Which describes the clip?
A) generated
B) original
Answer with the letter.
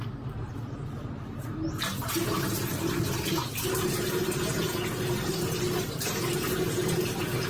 B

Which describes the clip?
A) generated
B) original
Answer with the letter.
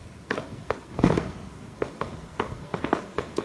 A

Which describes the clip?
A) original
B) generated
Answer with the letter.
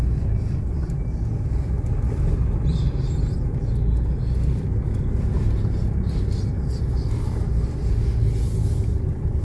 A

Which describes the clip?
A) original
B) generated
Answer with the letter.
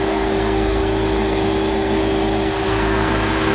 B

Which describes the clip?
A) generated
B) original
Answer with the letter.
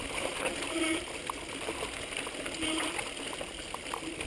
B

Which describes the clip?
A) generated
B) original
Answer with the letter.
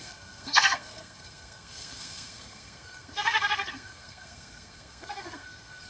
A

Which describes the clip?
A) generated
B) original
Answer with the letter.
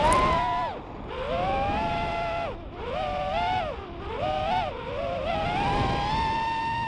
B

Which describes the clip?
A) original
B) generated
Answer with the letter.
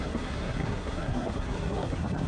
B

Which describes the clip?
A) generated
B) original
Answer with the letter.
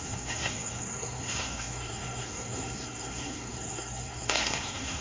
A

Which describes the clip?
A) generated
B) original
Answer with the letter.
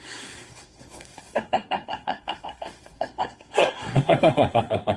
A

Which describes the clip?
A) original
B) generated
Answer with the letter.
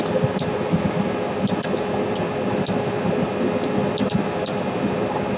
A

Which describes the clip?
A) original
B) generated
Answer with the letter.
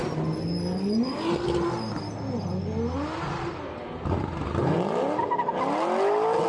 A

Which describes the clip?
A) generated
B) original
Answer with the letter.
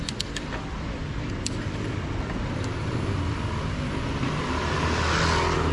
B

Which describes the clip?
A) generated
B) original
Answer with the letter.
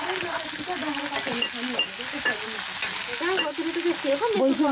B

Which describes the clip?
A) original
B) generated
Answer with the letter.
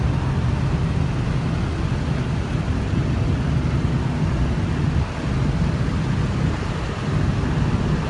A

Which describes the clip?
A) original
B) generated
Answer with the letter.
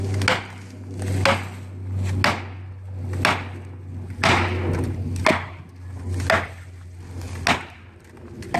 A